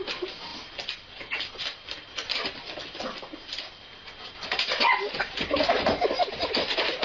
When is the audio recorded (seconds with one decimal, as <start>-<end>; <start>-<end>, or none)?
0.0-7.0